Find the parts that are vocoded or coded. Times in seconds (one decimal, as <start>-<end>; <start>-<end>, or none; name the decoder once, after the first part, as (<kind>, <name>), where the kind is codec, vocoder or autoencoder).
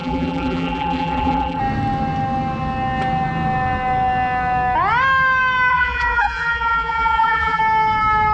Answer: 0.0-1.6 (vocoder, BigVGAN v2); 5.7-7.6